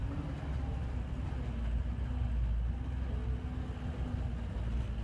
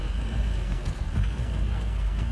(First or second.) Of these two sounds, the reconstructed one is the second